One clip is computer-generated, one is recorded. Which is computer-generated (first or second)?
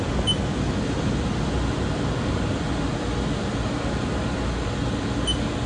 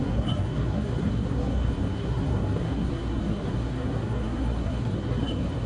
second